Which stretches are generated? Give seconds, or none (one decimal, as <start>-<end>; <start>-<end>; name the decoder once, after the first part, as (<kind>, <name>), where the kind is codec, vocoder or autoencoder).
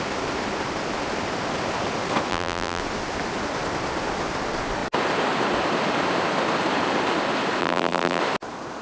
2.3-2.8 (vocoder, BigVGAN v2); 7.6-8.2